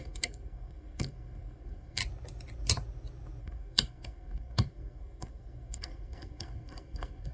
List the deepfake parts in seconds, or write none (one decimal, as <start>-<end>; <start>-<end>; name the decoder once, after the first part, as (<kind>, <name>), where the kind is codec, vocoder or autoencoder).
0.0-2.0 (codec, SNAC); 3.4-7.3